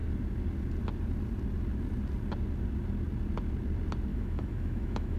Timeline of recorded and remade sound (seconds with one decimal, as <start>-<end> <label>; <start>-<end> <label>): 0.0-4.1 recorded; 4.1-5.2 remade